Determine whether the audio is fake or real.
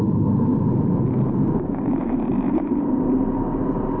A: real